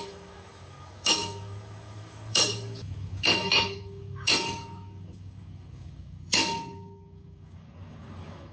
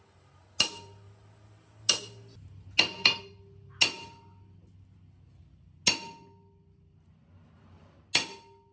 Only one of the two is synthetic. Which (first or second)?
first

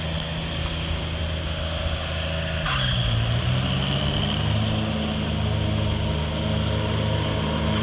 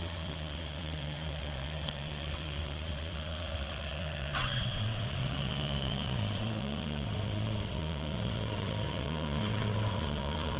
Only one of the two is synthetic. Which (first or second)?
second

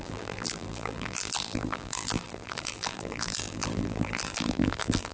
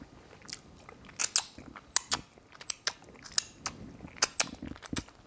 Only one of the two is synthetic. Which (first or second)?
first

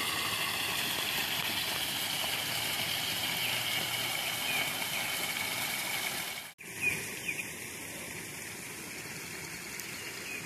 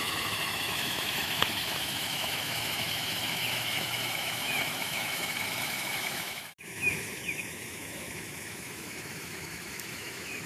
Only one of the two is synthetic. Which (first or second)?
second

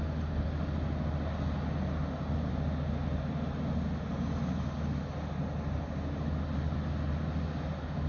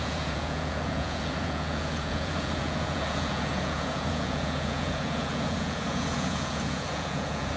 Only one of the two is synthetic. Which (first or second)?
second